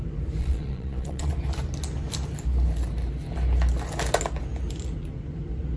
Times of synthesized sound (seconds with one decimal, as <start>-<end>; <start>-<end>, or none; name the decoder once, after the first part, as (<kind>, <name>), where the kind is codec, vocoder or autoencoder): 0.4-1.3 (vocoder, Vocos)